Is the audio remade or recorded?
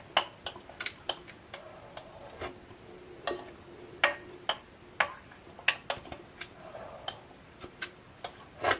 recorded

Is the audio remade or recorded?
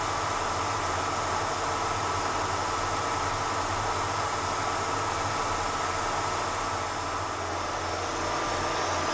recorded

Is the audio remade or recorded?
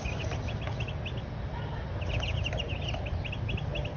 recorded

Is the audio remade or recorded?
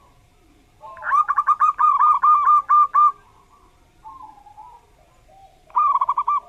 remade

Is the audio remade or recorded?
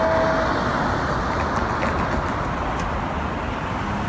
recorded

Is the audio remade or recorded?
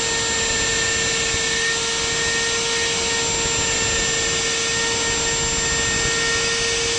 recorded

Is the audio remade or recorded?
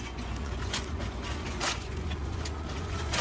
remade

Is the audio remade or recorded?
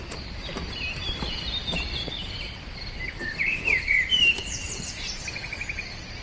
remade